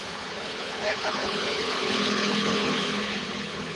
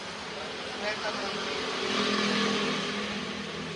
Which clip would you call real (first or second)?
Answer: second